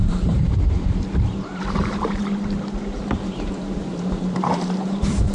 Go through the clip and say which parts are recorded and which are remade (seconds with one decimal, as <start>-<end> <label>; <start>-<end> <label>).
0.0-2.2 remade; 2.2-3.2 recorded; 3.2-5.3 remade